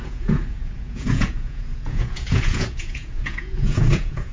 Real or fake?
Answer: fake